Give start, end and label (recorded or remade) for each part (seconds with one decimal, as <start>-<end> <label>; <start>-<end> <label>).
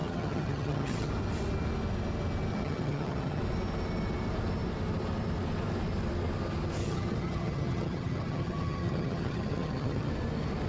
0.0-1.1 remade; 1.1-2.5 recorded; 2.5-3.4 remade; 3.4-6.8 recorded; 6.8-10.1 remade; 10.1-10.7 recorded